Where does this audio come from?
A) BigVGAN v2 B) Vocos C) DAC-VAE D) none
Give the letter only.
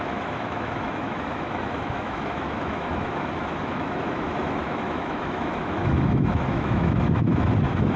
C